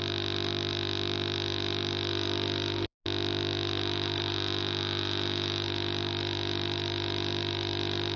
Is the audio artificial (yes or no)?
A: no